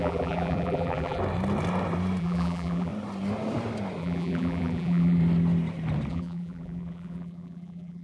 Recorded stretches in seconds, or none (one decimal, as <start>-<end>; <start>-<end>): 1.2-2.2; 2.9-4.0; 5.2-6.1